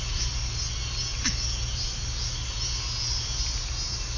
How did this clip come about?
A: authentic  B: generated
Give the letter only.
A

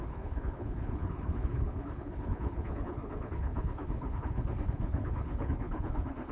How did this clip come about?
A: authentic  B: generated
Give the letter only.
B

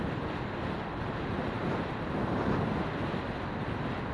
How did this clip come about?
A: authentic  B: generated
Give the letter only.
A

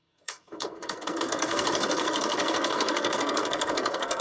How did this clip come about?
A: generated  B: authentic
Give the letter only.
A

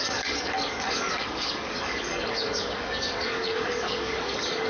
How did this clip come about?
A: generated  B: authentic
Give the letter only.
A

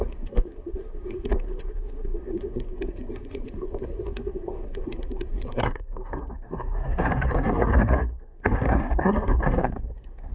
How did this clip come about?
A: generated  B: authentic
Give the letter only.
A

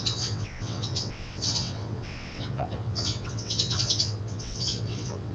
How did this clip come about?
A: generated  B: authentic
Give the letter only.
A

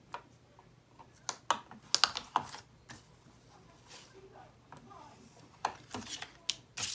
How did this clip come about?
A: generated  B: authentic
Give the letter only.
B